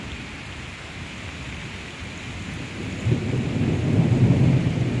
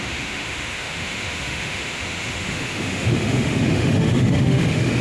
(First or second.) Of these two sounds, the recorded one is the first